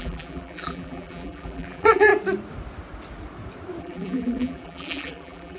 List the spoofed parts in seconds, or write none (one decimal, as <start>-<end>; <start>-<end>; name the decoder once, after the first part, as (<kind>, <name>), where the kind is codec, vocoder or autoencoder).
0.0-2.1 (vocoder, BigVGAN v2); 3.8-5.6

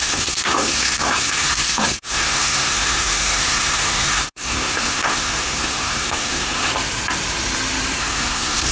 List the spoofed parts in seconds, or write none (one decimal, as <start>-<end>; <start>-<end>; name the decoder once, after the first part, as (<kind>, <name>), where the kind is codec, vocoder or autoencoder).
0.0-6.7 (codec, SNAC); 8.0-8.7

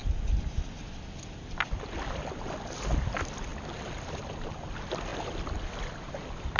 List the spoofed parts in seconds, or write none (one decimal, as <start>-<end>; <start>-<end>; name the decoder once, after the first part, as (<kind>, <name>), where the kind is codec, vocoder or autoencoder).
5.1-6.1 (vocoder, BigVGAN v2)

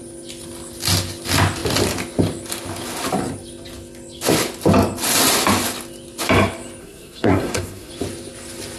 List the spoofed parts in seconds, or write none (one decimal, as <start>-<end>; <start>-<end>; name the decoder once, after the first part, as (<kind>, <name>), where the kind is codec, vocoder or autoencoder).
6.8-7.9 (codec, SNAC)

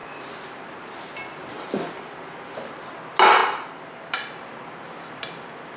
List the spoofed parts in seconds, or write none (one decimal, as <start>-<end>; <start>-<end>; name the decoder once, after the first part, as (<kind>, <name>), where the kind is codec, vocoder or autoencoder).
3.4-4.3 (vocoder, BigVGAN v2)

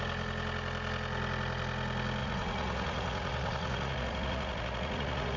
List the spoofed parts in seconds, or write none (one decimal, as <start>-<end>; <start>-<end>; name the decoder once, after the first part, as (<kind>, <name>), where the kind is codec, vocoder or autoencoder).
2.2-5.4 (vocoder, Vocos)

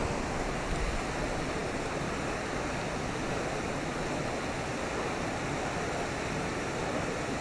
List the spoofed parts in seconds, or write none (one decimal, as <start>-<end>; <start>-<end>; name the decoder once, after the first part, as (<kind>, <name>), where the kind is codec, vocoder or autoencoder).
none